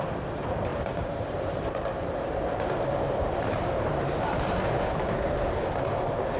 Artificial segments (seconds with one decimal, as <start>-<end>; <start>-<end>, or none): 0.7-4.5